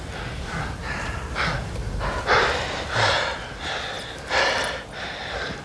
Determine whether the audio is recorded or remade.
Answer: recorded